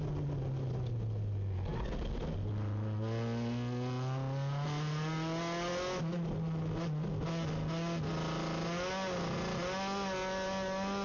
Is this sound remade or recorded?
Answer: recorded